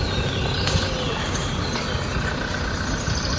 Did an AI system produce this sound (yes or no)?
no